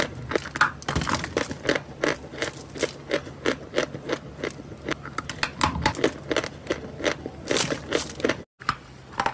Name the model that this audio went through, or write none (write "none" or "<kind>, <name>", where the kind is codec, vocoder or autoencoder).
none